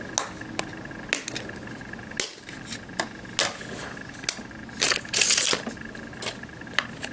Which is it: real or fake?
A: real